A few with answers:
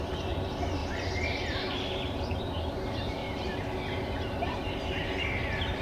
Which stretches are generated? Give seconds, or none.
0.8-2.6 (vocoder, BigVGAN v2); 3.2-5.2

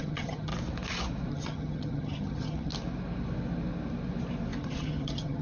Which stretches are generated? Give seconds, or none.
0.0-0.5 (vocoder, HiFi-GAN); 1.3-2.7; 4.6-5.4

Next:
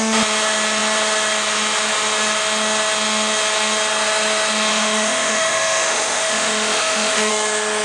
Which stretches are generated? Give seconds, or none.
4.7-7.3 (autoencoder, DAC-VAE)

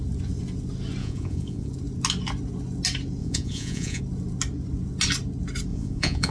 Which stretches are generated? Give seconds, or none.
1.0-1.7 (vocoder, Vocos); 3.2-4.0; 5.7-6.3

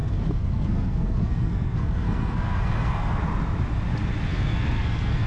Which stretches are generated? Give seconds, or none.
0.0-3.2 (codec, SNAC); 4.3-5.3

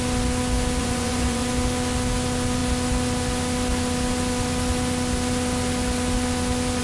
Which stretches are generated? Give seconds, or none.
0.8-1.5 (vocoder, Vocos)